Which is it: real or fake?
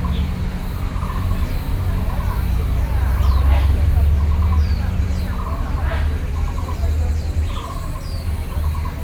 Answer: real